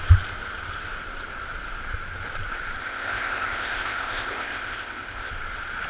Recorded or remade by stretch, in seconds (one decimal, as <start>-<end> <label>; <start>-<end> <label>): 0.0-2.8 recorded; 2.8-5.3 remade; 5.3-5.9 recorded